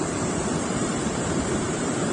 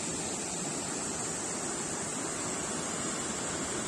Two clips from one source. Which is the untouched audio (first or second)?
second